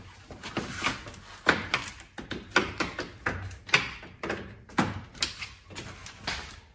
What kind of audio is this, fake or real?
real